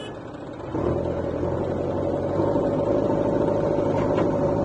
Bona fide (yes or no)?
yes